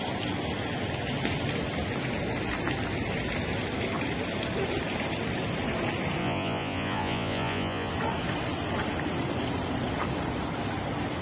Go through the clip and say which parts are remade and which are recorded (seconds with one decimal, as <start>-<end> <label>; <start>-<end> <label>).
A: 0.0-6.2 recorded; 6.2-7.9 remade; 7.9-11.2 recorded